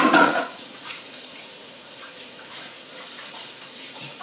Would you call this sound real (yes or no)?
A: no